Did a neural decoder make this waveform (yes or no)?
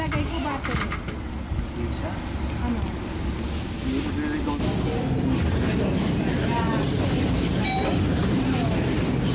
no